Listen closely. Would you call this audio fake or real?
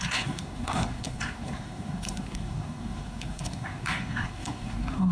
fake